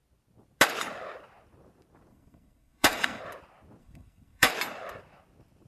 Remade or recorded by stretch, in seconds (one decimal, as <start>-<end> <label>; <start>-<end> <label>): 0.0-2.1 recorded; 2.1-3.2 remade; 3.2-3.8 recorded; 3.8-4.5 remade; 4.5-5.7 recorded